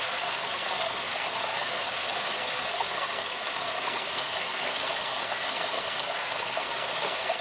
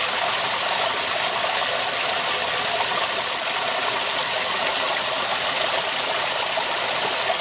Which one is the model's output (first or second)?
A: first